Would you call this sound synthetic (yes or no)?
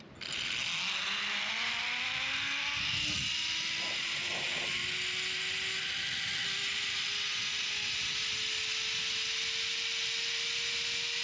no